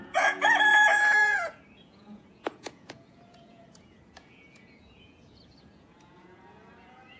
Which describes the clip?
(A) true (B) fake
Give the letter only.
B